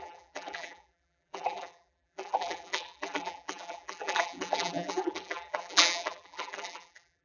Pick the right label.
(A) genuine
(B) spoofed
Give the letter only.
B